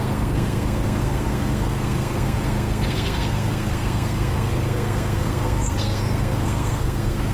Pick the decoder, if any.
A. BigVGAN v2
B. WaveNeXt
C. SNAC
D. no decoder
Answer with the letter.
C